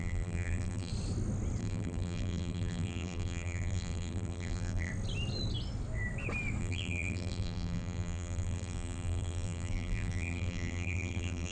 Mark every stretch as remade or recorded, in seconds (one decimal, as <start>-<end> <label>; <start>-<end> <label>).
0.0-0.9 remade; 0.9-1.6 recorded; 1.6-4.9 remade; 4.9-6.6 recorded; 6.6-11.5 remade